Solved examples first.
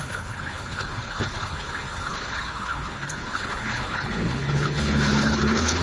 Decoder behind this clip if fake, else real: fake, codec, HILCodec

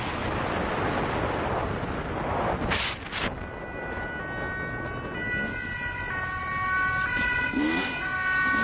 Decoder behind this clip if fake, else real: real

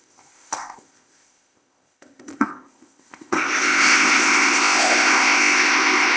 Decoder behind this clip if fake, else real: fake, codec, ZipCodec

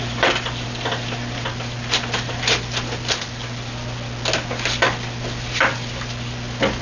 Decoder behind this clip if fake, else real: real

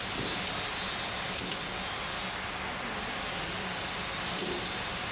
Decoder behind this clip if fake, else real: real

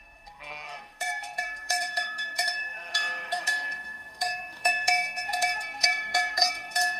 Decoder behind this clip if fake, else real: fake, codec, SNAC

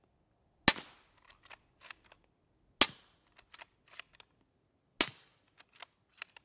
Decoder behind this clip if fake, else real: real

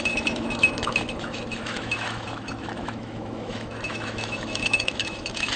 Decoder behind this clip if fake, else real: fake, autoencoder, DAC-VAE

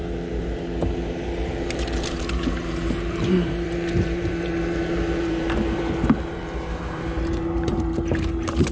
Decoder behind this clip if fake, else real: fake, vocoder, BigVGAN v2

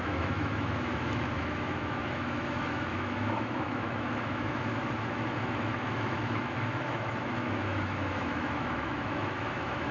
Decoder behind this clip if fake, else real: fake, autoencoder, DAC-VAE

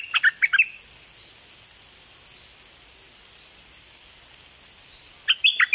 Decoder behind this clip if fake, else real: real